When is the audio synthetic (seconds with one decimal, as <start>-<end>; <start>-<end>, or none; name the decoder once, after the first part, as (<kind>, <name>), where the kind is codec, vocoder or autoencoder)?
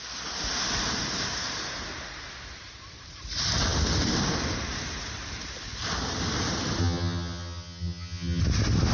6.8-8.4 (vocoder, HiFi-GAN)